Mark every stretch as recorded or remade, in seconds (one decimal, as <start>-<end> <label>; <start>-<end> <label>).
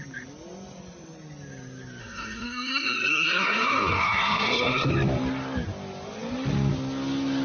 0.0-2.0 recorded; 2.0-4.9 remade; 4.9-7.4 recorded